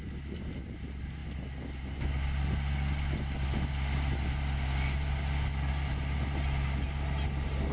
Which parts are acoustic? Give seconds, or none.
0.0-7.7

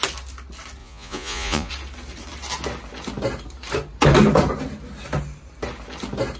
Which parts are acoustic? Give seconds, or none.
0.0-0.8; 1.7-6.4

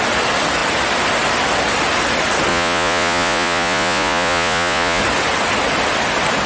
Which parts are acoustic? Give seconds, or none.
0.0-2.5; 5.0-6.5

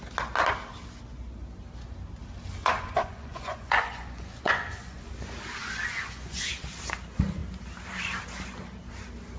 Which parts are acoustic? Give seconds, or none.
0.0-2.6; 5.1-5.6; 6.5-9.4

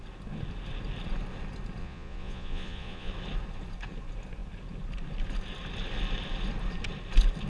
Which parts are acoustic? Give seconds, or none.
0.0-1.8; 3.1-7.5

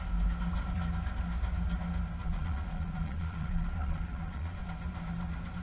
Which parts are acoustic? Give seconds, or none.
0.0-2.2; 4.6-5.6